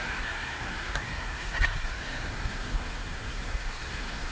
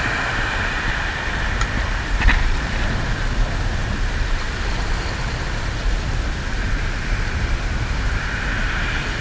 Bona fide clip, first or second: second